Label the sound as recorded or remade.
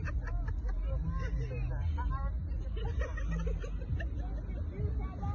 recorded